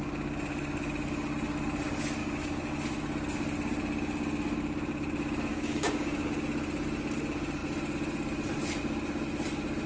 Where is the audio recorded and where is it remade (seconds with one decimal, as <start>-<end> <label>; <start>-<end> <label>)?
0.0-2.2 recorded; 2.2-2.7 remade; 2.7-5.5 recorded; 5.5-6.3 remade; 6.3-9.9 recorded